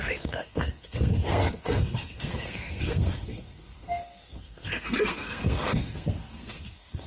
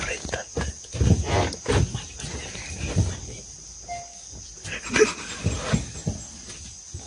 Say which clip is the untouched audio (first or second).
second